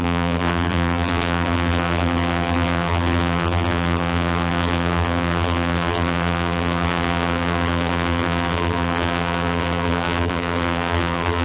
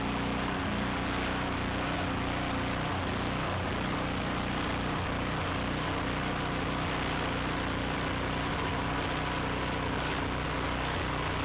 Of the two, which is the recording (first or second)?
second